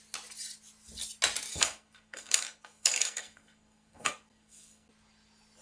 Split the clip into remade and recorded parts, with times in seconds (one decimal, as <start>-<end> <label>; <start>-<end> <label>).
0.0-1.5 recorded; 1.5-4.9 remade; 4.9-5.6 recorded